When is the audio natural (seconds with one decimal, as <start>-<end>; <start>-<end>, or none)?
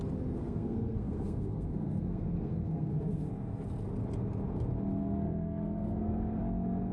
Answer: 0.0-0.4; 3.3-5.0; 6.4-6.9